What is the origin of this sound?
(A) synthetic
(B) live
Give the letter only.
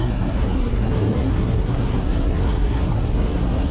A